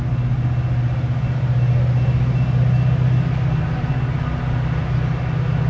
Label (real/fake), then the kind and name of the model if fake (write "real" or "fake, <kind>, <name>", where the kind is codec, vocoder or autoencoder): real